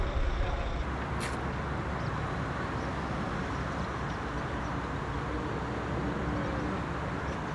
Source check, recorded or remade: recorded